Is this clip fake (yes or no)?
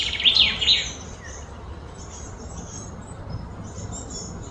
no